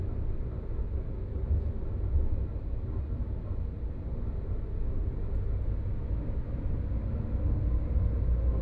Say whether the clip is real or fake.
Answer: real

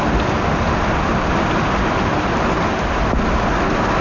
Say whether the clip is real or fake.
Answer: real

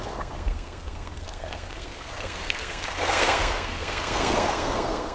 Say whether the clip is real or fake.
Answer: fake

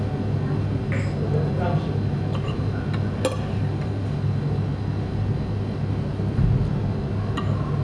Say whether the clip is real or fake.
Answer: real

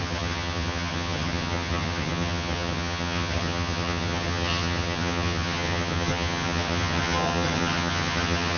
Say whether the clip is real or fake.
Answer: fake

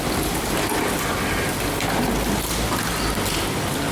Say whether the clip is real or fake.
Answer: real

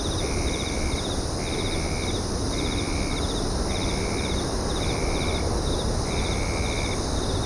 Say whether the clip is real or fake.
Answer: real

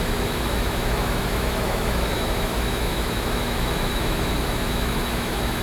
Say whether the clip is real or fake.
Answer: fake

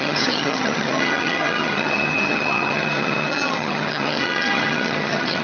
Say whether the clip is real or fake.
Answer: fake